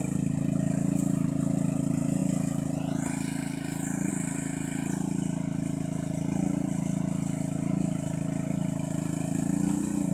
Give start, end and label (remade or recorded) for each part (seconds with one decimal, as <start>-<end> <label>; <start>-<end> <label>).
0.0-10.1 recorded